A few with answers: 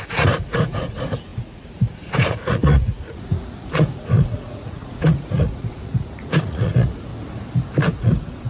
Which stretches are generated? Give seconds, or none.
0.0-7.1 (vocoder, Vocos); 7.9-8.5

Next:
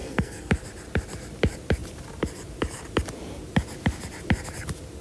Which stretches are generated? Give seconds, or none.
0.0-0.5 (codec, SNAC)